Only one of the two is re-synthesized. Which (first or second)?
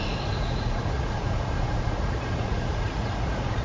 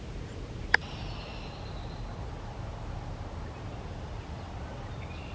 first